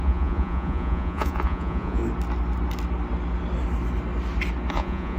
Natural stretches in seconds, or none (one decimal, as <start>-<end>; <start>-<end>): 2.0-4.7